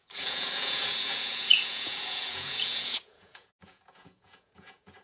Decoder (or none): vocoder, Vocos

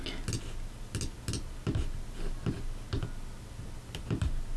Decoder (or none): none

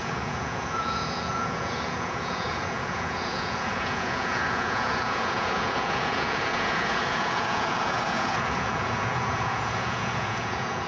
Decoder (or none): vocoder, Vocos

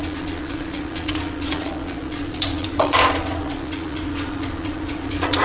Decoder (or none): vocoder, Vocos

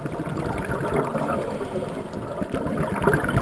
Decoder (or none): none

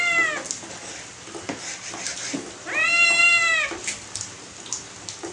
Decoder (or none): none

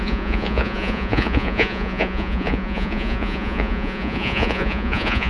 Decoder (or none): vocoder, Vocos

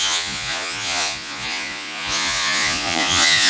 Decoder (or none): vocoder, Vocos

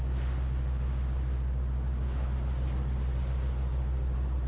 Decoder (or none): none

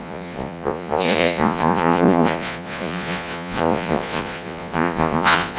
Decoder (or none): vocoder, Vocos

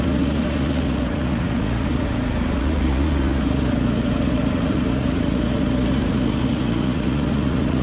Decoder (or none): vocoder, Vocos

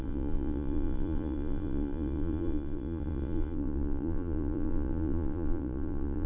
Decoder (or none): vocoder, Vocos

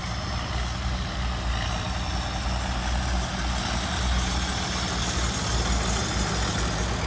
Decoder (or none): none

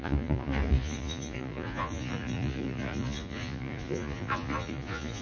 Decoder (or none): vocoder, Vocos